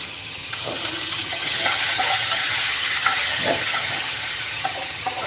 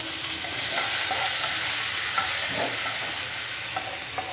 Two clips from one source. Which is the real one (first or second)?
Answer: second